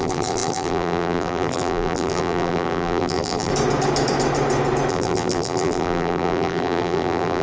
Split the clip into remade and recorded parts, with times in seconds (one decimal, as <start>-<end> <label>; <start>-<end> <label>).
0.0-3.5 remade; 3.5-4.9 recorded; 4.9-7.4 remade